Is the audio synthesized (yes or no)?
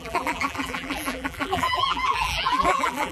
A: yes